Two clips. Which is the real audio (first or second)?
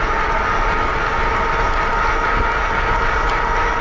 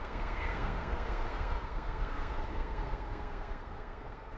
first